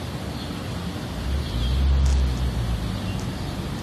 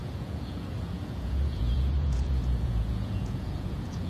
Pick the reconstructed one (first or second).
second